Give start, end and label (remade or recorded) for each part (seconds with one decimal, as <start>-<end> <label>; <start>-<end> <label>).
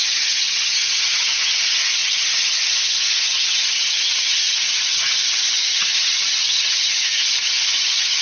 0.0-8.2 remade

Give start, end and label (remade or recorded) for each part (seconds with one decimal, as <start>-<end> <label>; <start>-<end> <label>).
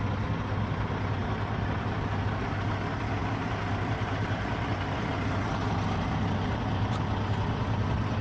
0.0-1.2 recorded; 1.2-2.7 remade; 2.7-3.2 recorded; 3.2-7.0 remade; 7.0-8.2 recorded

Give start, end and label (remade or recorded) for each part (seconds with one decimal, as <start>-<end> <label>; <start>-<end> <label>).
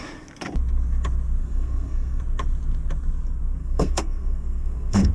0.0-1.4 recorded; 1.4-2.2 remade; 2.2-3.6 recorded; 3.6-5.1 remade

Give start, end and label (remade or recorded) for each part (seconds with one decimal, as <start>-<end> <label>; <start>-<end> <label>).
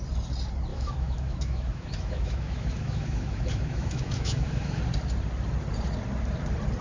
0.0-0.7 recorded; 0.7-4.8 remade; 4.8-6.8 recorded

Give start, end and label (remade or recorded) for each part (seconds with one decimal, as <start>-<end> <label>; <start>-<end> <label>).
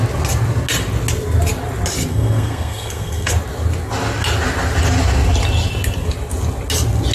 0.0-2.1 recorded; 2.1-3.3 remade; 3.3-7.1 recorded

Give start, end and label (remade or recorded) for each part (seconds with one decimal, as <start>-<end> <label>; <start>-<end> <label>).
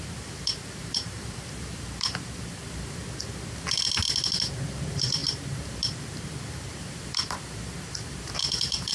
0.0-3.0 remade; 3.0-4.7 recorded; 4.7-8.9 remade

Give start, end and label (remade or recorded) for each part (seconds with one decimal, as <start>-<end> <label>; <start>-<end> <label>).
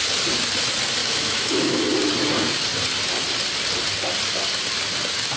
0.0-1.0 recorded; 1.0-1.8 remade; 1.8-5.4 recorded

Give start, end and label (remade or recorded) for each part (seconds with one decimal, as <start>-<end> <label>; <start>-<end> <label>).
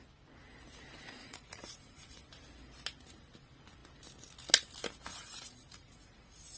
0.0-1.2 recorded; 1.2-2.3 remade; 2.3-5.1 recorded; 5.1-6.6 remade